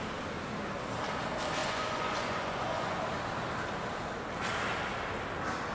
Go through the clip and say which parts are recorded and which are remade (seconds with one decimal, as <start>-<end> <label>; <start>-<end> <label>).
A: 0.0-1.6 recorded; 1.6-3.0 remade; 3.0-5.7 recorded